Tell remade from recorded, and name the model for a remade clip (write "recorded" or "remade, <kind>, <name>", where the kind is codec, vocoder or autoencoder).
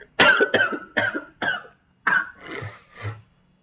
recorded